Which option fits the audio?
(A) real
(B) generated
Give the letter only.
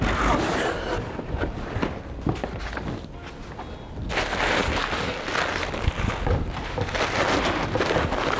A